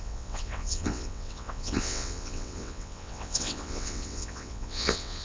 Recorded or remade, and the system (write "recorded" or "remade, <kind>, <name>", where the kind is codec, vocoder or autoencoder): remade, vocoder, WaveNeXt